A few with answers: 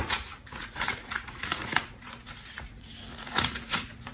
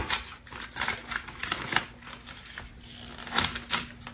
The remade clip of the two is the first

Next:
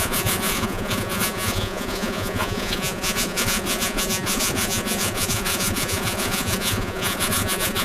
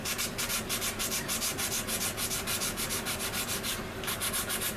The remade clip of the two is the first